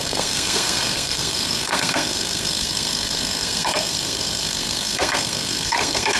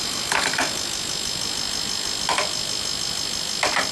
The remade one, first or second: first